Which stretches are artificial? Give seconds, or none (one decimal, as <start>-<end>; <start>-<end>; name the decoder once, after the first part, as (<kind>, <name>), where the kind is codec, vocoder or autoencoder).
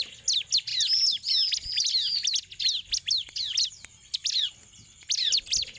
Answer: none